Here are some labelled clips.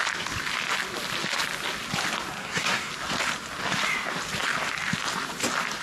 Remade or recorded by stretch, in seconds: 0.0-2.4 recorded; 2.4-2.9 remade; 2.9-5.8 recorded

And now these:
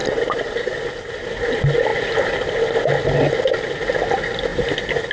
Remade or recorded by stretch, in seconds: 0.0-4.5 recorded; 4.5-5.1 remade

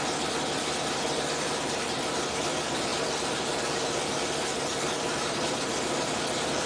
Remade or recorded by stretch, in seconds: 0.0-6.7 recorded

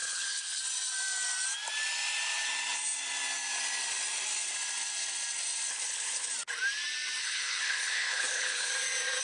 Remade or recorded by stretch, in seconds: 0.0-0.6 remade; 0.6-5.7 recorded; 5.7-6.3 remade; 6.3-7.2 recorded; 7.2-8.7 remade; 8.7-9.2 recorded

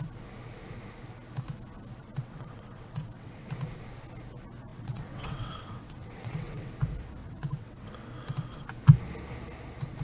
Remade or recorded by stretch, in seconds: 0.0-2.0 recorded; 2.0-3.5 remade; 3.5-4.7 recorded; 4.7-6.7 remade; 6.7-7.2 recorded; 7.2-7.9 remade; 7.9-10.0 recorded